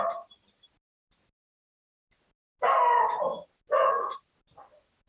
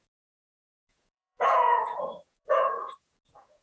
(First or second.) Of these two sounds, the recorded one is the first